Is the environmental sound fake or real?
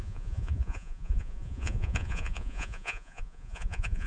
fake